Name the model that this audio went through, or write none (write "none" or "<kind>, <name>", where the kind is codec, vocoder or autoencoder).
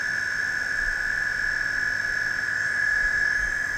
none